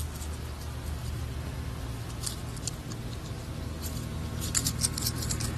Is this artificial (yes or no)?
no